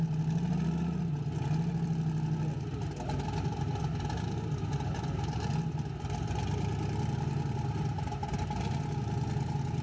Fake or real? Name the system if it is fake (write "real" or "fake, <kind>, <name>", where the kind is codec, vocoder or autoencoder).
real